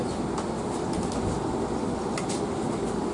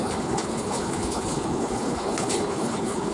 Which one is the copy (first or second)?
second